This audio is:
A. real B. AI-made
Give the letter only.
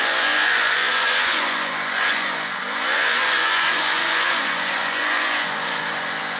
B